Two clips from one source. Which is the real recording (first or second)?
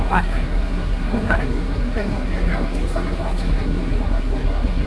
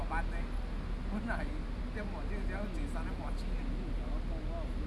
second